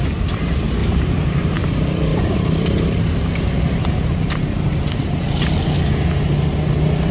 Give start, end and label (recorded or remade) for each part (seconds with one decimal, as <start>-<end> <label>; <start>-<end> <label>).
0.0-0.8 recorded; 0.8-1.6 remade; 1.6-2.1 recorded; 2.1-2.7 remade; 2.7-7.1 recorded